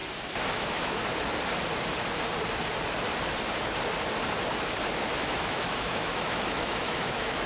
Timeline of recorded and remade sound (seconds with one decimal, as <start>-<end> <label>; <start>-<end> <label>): 0.0-0.5 recorded; 0.5-1.0 remade; 1.0-5.0 recorded; 5.0-7.5 remade